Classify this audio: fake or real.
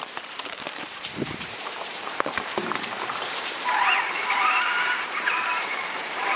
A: fake